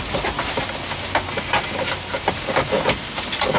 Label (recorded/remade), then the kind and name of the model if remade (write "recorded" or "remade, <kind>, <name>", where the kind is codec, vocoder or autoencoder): recorded